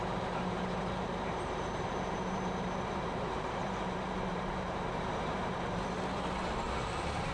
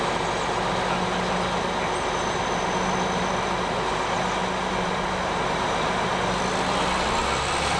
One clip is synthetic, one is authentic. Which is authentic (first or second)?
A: second